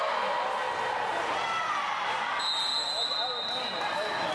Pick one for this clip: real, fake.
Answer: real